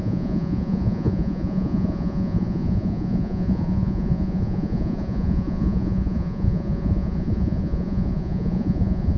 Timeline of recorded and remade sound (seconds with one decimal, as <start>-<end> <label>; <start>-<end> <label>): 0.0-9.2 remade